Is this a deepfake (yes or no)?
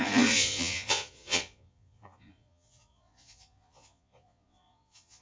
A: yes